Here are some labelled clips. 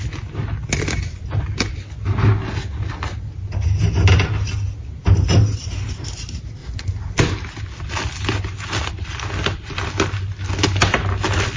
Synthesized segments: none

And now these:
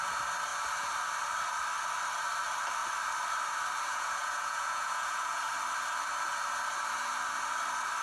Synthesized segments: 3.9-5.4

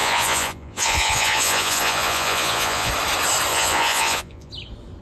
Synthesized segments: 0.0-2.9; 3.5-4.5

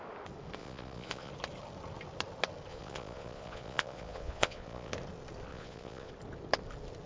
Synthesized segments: 0.6-1.3; 2.7-4.9; 5.5-6.1

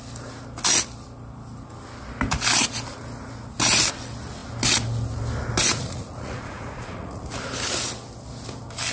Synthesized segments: 5.7-7.2